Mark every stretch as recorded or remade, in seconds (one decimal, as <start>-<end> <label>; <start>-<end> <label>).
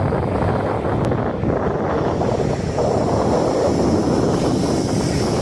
0.0-5.4 recorded